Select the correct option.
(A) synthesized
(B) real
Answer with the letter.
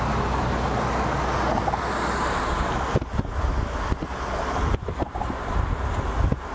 B